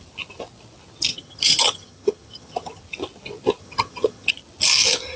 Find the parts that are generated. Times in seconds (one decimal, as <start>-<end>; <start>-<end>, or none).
1.1-2.8; 3.6-4.3